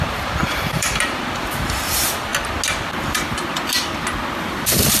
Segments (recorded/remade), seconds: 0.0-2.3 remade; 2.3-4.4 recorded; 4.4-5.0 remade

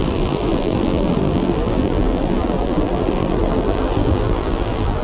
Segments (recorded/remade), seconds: 0.0-5.0 remade

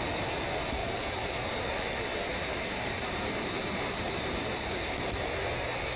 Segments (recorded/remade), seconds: 0.0-0.8 recorded; 0.8-1.5 remade; 1.5-2.3 recorded; 2.3-5.2 remade; 5.2-6.0 recorded